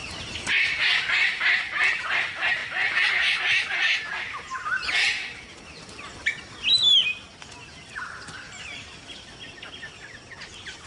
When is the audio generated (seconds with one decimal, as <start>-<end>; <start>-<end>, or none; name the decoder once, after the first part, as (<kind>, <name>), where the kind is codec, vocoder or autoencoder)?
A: none